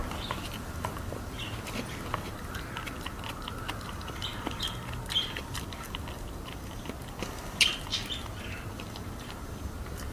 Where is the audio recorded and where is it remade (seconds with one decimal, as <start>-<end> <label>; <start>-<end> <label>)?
0.0-10.1 recorded